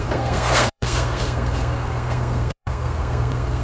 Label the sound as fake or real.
fake